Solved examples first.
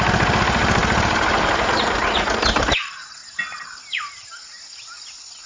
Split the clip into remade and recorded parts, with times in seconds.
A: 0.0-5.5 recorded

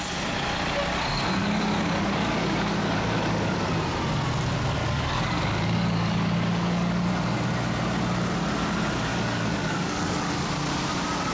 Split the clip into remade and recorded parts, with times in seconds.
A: 0.0-1.4 recorded; 1.4-3.7 remade; 3.7-4.8 recorded; 4.8-7.1 remade; 7.1-9.1 recorded; 9.1-10.5 remade; 10.5-11.3 recorded

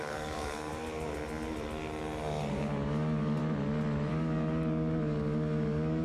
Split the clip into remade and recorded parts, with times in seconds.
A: 0.0-0.7 remade; 0.7-2.5 recorded; 2.5-3.4 remade; 3.4-4.1 recorded; 4.1-6.0 remade

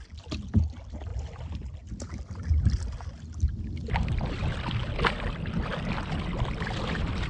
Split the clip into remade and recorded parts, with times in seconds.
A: 0.0-7.3 recorded

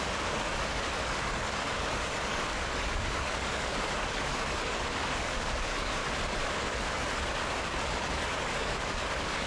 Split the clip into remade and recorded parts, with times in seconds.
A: 0.0-6.0 remade; 6.0-6.5 recorded; 6.5-9.5 remade

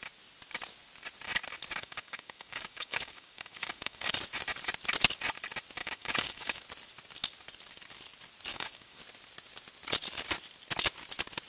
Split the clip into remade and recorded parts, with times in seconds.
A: 0.0-1.8 recorded; 1.8-4.1 remade; 4.1-5.8 recorded; 5.8-6.6 remade; 6.6-8.5 recorded; 8.5-9.0 remade; 9.0-11.5 recorded

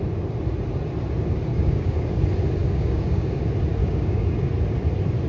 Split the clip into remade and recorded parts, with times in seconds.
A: 0.0-1.5 recorded; 1.5-2.2 remade; 2.2-2.6 recorded; 2.6-3.4 remade; 3.4-3.8 recorded; 3.8-4.5 remade; 4.5-5.3 recorded

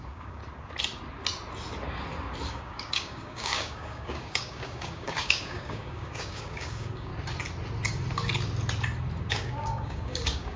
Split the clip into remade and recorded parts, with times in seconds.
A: 0.0-0.4 remade; 0.4-2.5 recorded; 2.5-7.1 remade; 7.1-9.3 recorded; 9.3-10.6 remade